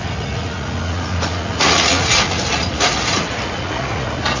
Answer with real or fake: fake